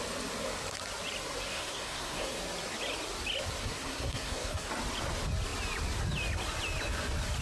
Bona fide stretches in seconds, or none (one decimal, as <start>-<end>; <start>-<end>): 0.0-1.5; 2.4-3.6; 4.7-7.4